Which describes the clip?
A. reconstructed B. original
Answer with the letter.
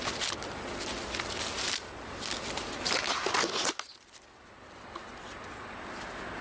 B